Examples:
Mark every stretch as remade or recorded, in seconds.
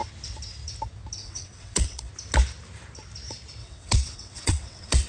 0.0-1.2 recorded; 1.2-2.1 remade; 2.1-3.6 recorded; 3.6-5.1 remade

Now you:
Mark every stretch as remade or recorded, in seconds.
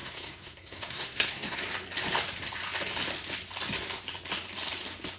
0.0-1.6 remade; 1.6-5.2 recorded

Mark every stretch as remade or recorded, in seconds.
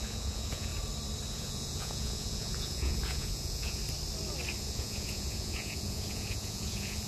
0.0-0.7 remade; 0.7-1.3 recorded; 1.3-3.8 remade; 3.8-4.6 recorded; 4.6-7.1 remade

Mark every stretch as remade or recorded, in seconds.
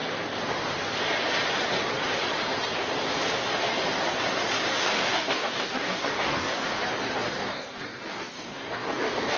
0.0-4.7 recorded; 4.7-6.8 remade; 6.8-7.4 recorded; 7.4-9.4 remade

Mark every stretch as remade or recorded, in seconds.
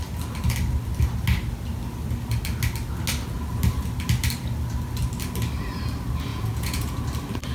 0.0-6.3 recorded; 6.3-7.0 remade; 7.0-7.5 recorded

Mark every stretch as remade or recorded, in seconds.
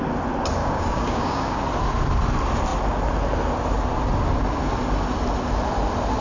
0.0-0.6 recorded; 0.6-1.6 remade; 1.6-6.2 recorded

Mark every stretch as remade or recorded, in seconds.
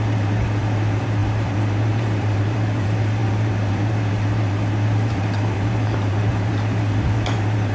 0.0-7.7 remade